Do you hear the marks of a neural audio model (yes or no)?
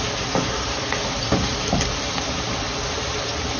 no